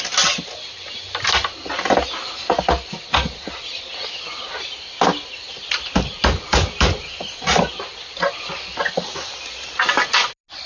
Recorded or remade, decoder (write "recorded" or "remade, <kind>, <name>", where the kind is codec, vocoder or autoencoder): recorded